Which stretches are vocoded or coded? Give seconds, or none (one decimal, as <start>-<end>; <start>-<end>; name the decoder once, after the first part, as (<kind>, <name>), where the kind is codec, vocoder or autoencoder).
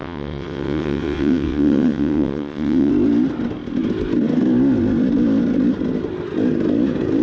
0.0-2.9 (vocoder, WaveNeXt)